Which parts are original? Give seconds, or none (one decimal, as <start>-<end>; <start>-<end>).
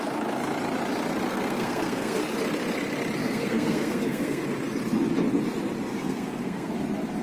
0.0-1.3; 2.2-3.2; 4.4-5.9; 6.7-7.2